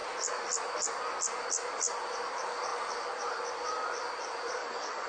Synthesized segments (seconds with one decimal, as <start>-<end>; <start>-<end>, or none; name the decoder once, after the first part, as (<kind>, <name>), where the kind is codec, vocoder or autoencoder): 4.6-5.1 (vocoder, WaveNeXt)